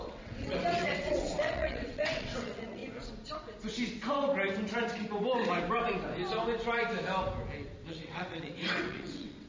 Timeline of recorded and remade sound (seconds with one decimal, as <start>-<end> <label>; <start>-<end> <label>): 0.0-2.8 remade; 2.8-7.9 recorded; 7.9-9.5 remade